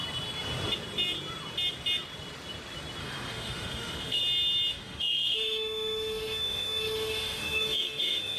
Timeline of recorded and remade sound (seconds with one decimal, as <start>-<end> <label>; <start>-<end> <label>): 0.0-3.0 recorded; 3.0-4.2 remade; 4.2-4.7 recorded; 4.7-8.4 remade